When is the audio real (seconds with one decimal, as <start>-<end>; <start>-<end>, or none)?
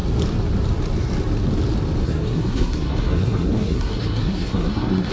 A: 0.0-2.0